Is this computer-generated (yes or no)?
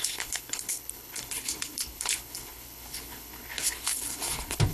yes